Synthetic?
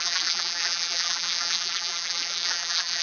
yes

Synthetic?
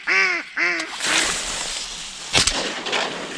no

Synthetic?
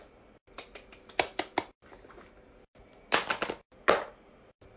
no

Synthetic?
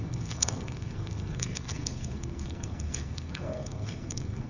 yes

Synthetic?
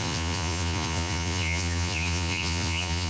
yes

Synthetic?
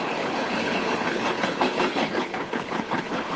yes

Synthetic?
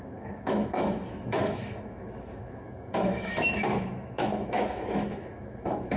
yes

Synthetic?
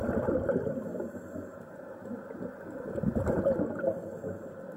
no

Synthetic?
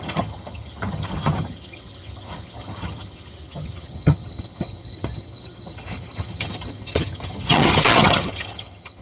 yes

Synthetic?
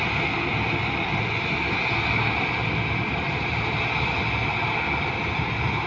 no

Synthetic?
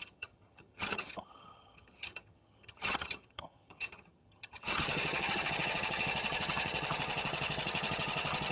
yes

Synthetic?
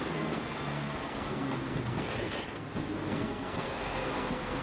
yes